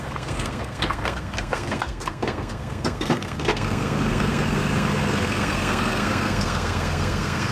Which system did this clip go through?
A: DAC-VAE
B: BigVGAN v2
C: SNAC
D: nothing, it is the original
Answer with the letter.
C